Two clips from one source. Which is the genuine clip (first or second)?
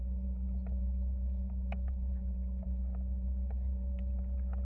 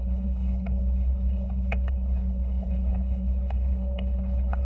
first